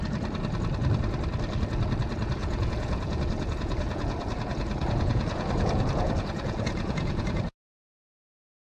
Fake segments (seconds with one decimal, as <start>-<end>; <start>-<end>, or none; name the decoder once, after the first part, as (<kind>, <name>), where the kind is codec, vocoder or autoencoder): 2.4-7.4 (vocoder, Vocos)